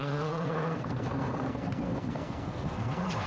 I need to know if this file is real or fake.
fake